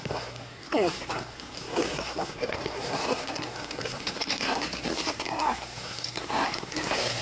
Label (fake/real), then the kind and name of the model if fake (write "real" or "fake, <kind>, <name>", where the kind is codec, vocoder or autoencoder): fake, codec, SNAC